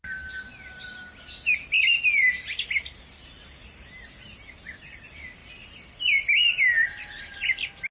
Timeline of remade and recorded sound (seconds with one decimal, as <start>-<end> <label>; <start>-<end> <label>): 0.0-7.9 recorded